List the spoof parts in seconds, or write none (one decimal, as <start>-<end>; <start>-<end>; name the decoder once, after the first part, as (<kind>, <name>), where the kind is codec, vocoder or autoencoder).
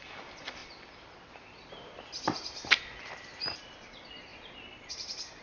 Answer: none